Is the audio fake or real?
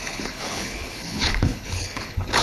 fake